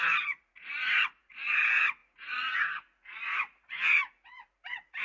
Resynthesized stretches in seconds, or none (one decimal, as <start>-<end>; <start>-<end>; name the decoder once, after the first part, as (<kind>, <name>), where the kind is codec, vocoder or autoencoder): 0.0-5.0 (vocoder, Vocos)